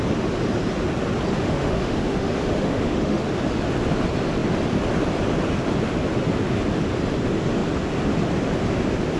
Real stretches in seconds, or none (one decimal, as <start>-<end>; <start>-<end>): 0.0-1.3; 3.3-9.2